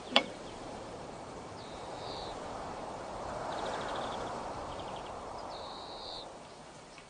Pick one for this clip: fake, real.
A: fake